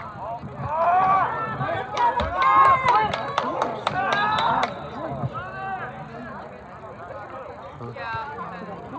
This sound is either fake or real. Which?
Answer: real